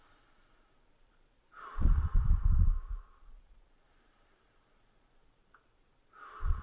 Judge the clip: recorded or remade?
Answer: remade